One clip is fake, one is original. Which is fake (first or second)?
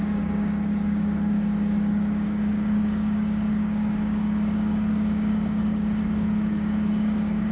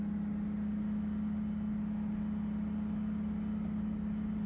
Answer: first